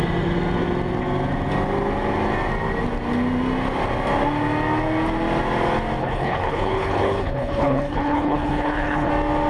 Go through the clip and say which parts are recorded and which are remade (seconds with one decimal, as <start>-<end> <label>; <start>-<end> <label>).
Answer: 0.0-6.0 recorded; 6.0-9.1 remade; 9.1-9.5 recorded